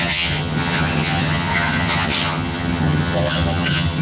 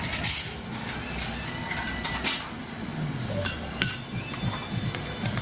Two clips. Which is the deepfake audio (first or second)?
first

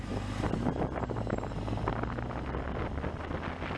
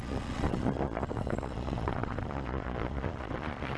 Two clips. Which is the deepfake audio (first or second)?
second